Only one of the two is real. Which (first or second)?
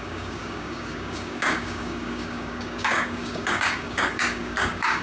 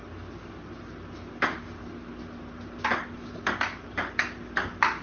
second